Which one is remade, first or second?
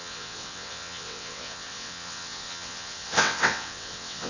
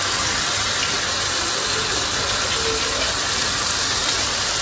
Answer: first